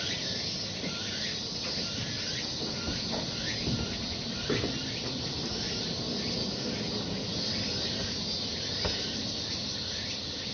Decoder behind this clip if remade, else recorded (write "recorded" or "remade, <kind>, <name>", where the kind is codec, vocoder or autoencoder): recorded